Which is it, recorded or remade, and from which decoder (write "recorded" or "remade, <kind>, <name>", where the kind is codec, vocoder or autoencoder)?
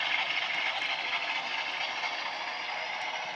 recorded